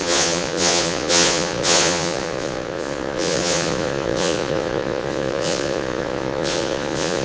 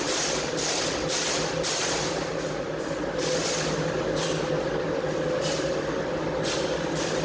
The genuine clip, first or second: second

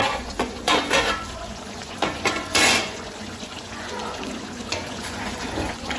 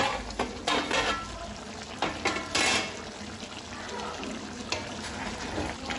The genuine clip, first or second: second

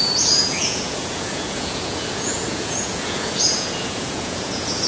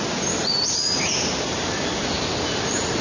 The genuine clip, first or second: second